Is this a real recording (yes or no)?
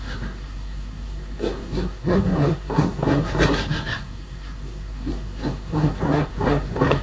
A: no